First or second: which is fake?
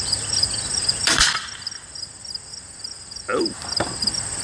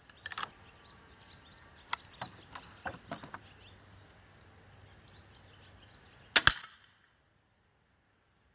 first